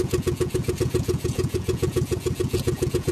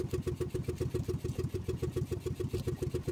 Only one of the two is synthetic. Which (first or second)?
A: first